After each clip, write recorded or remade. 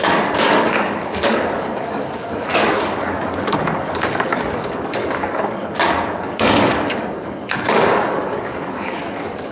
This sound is remade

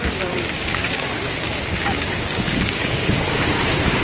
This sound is remade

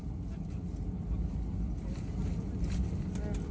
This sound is recorded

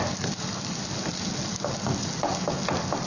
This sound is recorded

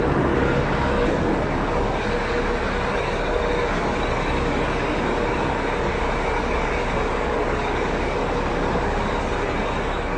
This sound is remade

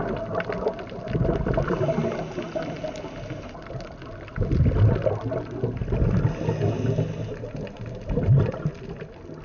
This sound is recorded